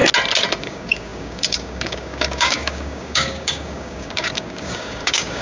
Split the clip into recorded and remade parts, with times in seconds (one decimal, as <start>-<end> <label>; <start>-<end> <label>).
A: 0.0-0.6 recorded; 0.6-5.4 remade